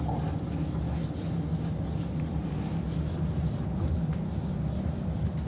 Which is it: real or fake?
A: real